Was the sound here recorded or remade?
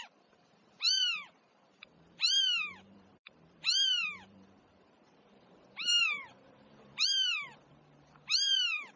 remade